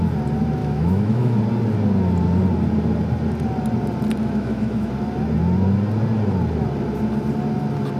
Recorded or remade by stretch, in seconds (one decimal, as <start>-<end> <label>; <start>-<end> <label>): 0.0-0.6 recorded; 0.6-1.4 remade; 1.4-4.2 recorded; 4.2-4.9 remade; 4.9-8.0 recorded